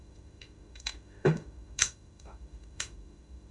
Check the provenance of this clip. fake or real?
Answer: fake